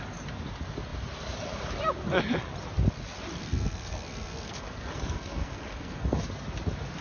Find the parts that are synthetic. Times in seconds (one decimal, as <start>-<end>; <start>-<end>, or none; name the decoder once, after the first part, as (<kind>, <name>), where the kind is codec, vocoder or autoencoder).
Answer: 3.4-6.2 (codec, SNAC)